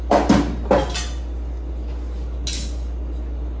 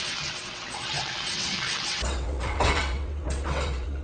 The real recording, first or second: first